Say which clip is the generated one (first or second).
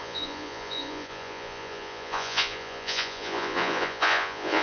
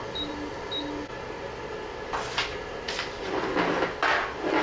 first